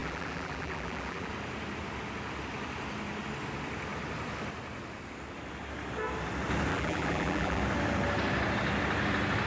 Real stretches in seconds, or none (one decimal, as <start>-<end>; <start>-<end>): 1.3-6.7; 7.6-9.5

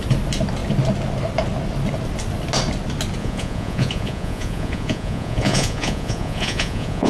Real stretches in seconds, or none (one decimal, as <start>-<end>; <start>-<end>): 0.0-3.2

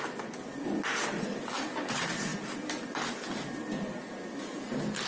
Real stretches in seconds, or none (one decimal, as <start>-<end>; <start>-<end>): 0.0-5.1

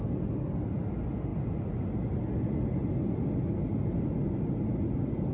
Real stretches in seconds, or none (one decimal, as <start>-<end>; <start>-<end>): 0.0-5.3

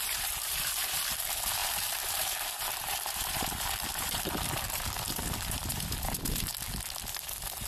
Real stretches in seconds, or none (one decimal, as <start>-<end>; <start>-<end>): 6.5-7.7